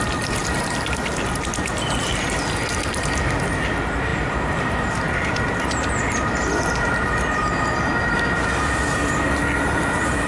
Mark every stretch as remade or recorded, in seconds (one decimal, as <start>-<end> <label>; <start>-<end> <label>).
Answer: 0.0-4.1 recorded; 4.1-6.2 remade; 6.2-10.3 recorded